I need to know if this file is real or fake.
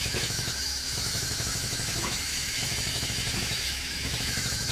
fake